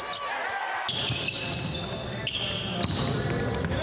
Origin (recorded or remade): recorded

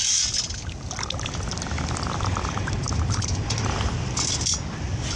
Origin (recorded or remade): remade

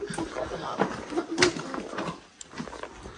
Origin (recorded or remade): recorded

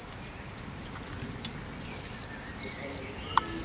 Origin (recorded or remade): recorded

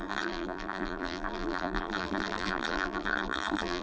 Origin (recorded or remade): remade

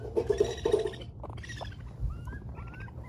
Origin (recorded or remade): remade